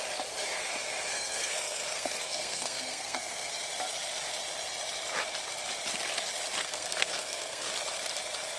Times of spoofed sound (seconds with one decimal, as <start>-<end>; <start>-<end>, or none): 1.1-3.5; 6.6-7.7